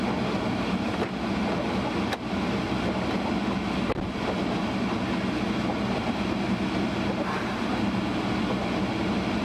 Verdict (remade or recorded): recorded